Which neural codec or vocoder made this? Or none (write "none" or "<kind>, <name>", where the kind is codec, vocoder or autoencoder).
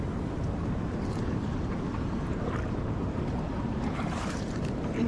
vocoder, BigVGAN v2